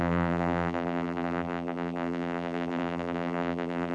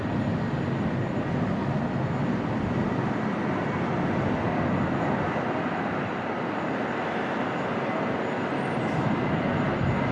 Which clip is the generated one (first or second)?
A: first